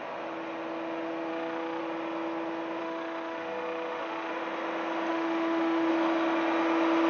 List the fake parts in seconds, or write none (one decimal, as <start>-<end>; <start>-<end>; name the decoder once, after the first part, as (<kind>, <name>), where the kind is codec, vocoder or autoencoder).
1.3-1.8 (autoencoder, DAC-VAE); 2.8-4.3; 5.1-5.9